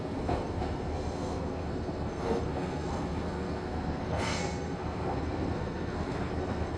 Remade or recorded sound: remade